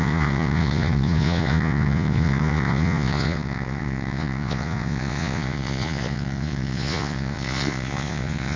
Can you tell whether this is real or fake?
fake